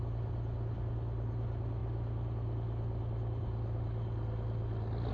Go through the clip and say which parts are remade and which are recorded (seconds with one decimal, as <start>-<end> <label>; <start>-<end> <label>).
0.0-5.1 recorded